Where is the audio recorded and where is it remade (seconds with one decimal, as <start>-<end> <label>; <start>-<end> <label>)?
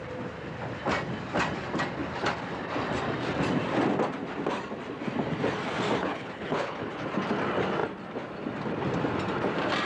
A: 0.0-6.0 recorded; 6.0-6.9 remade; 6.9-9.9 recorded